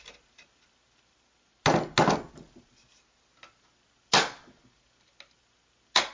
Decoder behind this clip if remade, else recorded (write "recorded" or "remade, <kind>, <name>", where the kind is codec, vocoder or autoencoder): recorded